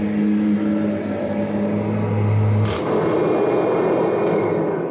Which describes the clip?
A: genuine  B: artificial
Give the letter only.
A